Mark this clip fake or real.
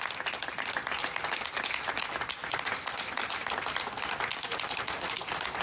real